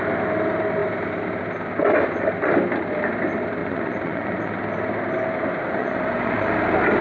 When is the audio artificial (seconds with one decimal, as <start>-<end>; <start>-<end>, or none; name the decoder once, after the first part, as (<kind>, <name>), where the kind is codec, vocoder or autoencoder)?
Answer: 3.6-4.5 (vocoder, Vocos); 5.8-6.5